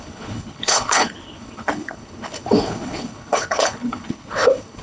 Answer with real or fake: fake